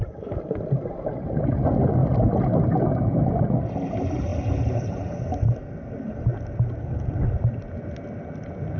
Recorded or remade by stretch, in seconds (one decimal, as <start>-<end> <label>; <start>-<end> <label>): 0.0-8.8 recorded